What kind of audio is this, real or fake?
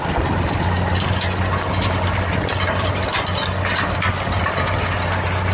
real